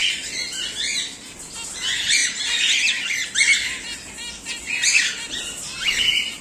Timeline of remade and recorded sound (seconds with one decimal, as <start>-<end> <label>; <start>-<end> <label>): 0.0-6.4 recorded